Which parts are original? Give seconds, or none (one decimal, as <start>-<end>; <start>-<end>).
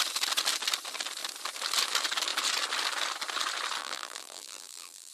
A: 0.0-3.8